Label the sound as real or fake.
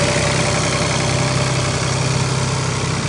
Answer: real